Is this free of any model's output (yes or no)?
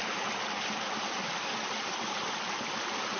yes